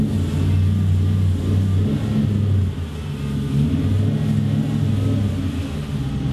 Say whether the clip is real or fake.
real